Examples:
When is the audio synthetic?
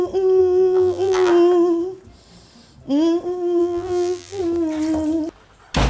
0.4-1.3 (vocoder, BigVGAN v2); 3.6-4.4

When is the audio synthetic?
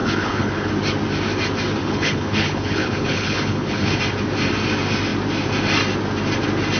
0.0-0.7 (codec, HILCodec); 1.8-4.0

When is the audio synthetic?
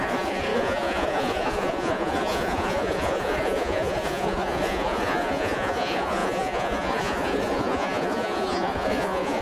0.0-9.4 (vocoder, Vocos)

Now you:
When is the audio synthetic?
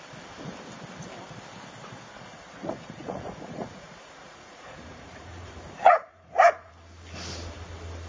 2.1-6.7 (vocoder, Vocos)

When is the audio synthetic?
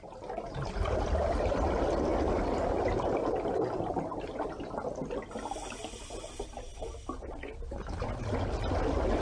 none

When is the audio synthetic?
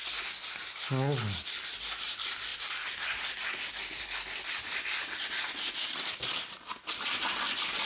none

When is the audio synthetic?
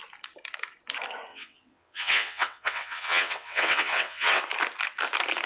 1.3-4.4 (vocoder, WaveNeXt)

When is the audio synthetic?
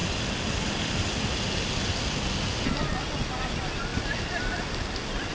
none